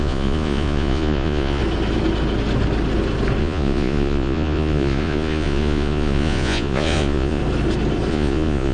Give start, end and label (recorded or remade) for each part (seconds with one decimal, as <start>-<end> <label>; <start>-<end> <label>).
0.0-1.6 remade; 1.6-3.4 recorded; 3.4-7.4 remade; 7.4-8.1 recorded; 8.1-8.7 remade